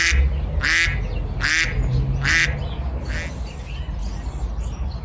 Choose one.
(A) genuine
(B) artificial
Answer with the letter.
A